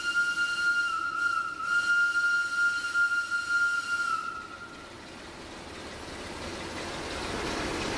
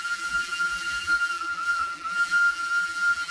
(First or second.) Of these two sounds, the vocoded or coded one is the second